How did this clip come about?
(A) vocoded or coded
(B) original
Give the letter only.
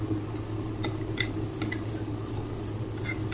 B